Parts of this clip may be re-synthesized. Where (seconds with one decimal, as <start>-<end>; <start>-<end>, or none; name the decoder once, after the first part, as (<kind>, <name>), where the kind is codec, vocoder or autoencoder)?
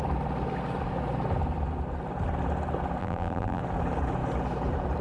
3.0-3.6 (vocoder, BigVGAN v2)